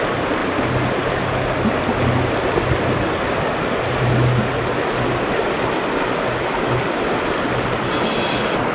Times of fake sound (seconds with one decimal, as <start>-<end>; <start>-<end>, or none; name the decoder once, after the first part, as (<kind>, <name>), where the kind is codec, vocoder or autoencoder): none